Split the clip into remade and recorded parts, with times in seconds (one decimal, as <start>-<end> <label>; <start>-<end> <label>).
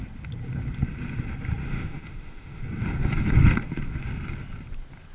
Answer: 0.0-1.6 recorded; 1.6-2.6 remade; 2.6-5.1 recorded